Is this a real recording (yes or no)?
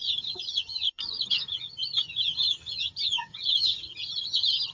no